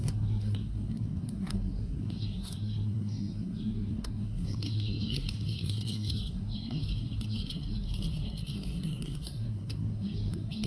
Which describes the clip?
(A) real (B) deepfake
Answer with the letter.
B